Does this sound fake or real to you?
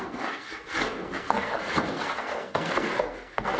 fake